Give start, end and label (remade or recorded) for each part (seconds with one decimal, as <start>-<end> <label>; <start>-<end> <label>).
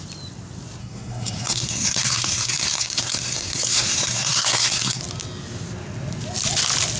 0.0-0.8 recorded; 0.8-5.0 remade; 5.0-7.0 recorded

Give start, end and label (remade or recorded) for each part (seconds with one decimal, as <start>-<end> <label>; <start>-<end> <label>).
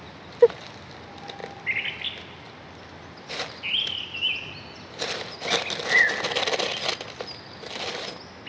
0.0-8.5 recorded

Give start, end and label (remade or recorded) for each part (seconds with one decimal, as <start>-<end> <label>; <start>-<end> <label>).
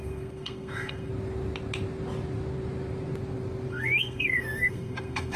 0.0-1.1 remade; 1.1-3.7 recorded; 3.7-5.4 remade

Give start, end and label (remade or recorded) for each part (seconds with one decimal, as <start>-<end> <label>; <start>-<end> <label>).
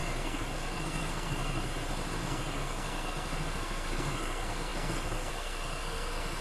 0.0-1.7 remade; 1.7-2.2 recorded; 2.2-6.4 remade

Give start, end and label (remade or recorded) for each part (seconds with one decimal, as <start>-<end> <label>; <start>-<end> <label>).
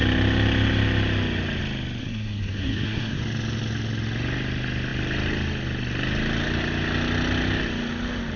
0.0-2.0 recorded; 2.0-3.2 remade; 3.2-8.4 recorded